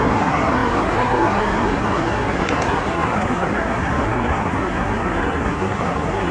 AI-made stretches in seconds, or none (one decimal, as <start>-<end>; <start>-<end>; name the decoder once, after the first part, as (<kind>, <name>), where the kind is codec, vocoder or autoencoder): 0.0-6.3 (codec, SNAC)